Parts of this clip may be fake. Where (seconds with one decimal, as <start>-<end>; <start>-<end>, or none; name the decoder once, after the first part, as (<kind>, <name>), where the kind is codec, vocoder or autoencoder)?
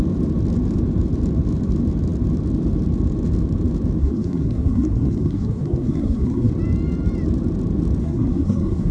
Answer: 4.0-6.5 (codec, SNAC); 8.0-8.9